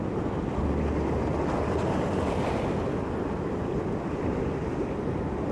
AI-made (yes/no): no